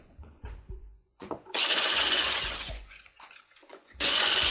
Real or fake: fake